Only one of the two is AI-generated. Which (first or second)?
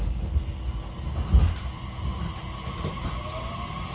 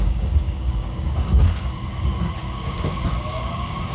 second